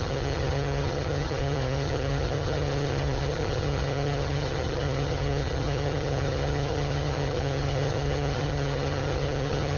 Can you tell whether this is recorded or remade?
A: remade